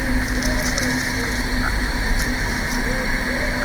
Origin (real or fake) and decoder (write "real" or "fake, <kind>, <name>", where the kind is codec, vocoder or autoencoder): real